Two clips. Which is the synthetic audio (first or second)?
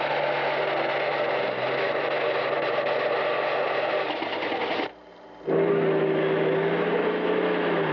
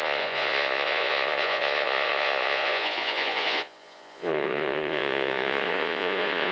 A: second